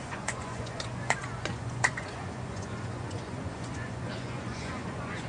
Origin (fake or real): fake